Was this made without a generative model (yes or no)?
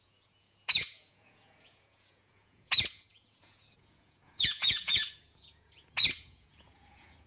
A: no